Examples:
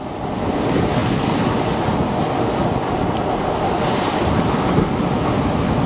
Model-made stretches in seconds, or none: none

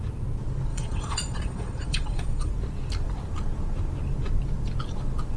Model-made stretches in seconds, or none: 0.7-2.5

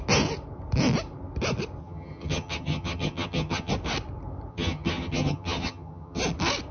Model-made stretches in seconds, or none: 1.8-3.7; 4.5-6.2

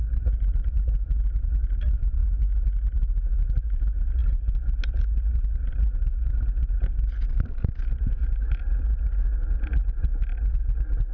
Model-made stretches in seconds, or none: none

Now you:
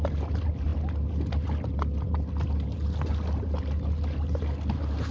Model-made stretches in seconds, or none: none

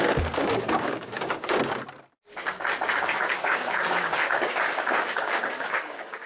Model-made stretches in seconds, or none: 0.0-1.8; 2.9-6.3

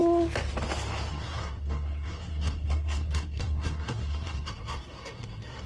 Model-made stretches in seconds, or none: 1.1-5.7